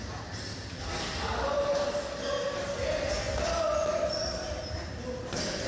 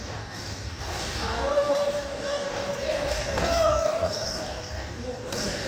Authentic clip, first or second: first